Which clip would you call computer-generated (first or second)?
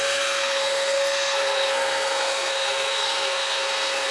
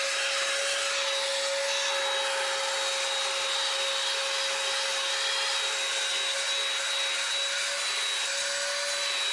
first